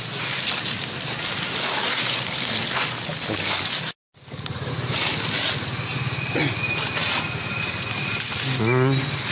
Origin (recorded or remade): recorded